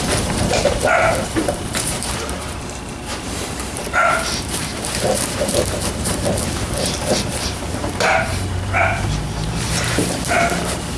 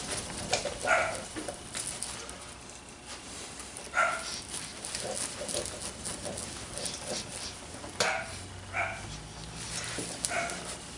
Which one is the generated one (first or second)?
first